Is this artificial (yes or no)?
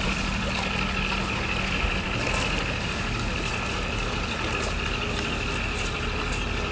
no